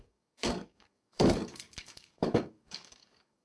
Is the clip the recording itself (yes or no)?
no